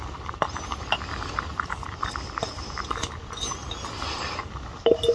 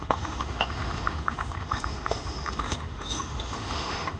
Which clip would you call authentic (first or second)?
first